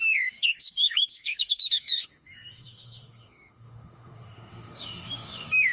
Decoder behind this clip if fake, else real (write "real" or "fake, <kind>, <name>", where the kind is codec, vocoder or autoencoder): fake, autoencoder, DAC-VAE